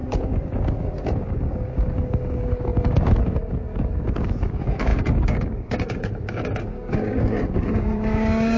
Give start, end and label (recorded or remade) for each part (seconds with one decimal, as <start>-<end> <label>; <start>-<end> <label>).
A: 0.0-8.6 remade

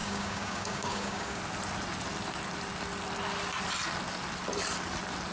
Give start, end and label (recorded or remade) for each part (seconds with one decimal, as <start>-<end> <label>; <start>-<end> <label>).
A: 0.0-1.4 remade; 1.4-5.3 recorded

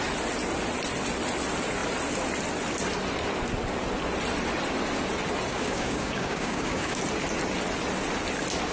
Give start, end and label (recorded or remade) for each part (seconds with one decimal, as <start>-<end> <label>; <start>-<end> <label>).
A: 0.0-5.5 recorded; 5.5-7.0 remade; 7.0-8.7 recorded

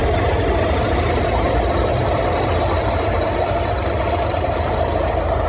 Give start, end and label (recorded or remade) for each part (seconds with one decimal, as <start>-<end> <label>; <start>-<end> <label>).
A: 0.0-5.5 recorded

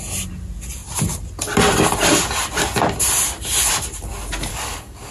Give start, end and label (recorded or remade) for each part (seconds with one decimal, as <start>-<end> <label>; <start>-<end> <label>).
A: 0.0-4.5 recorded; 4.5-5.1 remade

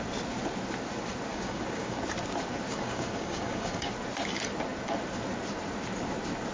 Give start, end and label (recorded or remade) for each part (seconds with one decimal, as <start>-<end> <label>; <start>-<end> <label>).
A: 0.0-1.3 recorded; 1.3-2.0 remade; 2.0-2.7 recorded; 2.7-3.9 remade; 3.9-6.5 recorded